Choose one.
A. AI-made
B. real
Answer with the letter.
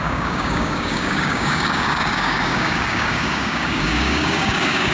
A